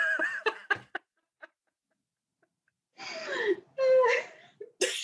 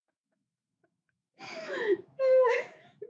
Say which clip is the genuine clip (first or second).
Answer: first